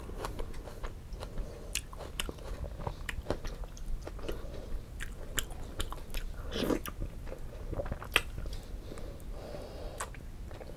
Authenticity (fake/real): real